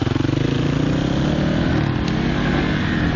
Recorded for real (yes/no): yes